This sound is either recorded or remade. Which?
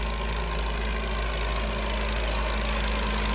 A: recorded